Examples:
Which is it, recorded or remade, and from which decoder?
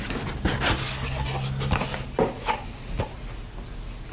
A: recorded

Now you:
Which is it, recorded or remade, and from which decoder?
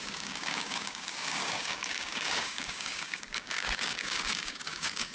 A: remade, codec, DAC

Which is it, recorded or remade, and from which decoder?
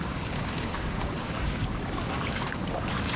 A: remade, codec, DAC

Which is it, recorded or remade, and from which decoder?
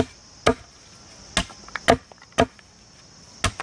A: recorded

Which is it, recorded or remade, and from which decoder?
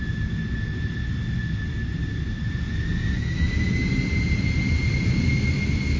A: recorded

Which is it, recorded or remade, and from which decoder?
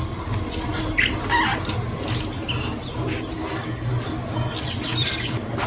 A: recorded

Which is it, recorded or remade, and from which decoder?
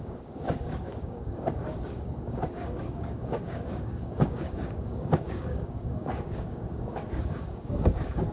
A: remade, codec, DAC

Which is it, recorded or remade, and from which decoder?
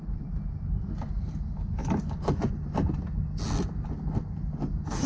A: recorded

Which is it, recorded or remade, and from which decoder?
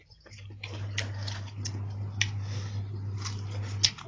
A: recorded